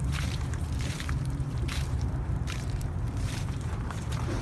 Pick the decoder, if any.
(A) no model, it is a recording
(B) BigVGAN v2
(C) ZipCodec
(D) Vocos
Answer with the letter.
B